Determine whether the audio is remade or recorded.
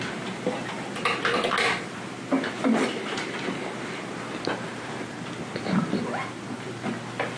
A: recorded